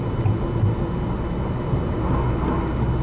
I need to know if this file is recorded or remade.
recorded